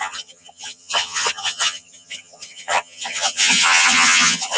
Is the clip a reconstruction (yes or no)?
yes